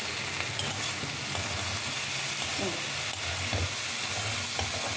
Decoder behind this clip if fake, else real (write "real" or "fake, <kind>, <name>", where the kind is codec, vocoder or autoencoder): real